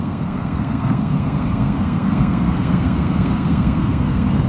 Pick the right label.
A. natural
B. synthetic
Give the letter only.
B